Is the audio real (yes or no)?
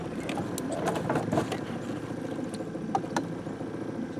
yes